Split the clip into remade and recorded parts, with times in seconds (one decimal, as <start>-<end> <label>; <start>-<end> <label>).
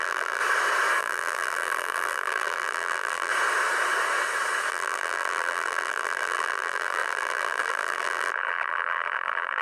0.0-0.4 remade; 0.4-1.0 recorded; 1.0-3.3 remade; 3.3-4.7 recorded; 4.7-9.6 remade